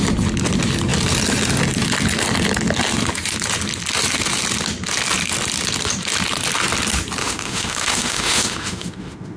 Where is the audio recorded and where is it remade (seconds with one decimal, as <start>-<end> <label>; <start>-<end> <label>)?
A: 0.0-7.2 recorded; 7.2-9.4 remade